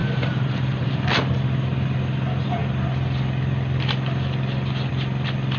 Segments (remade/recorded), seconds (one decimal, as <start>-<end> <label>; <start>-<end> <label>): 0.0-0.9 remade; 0.9-5.6 recorded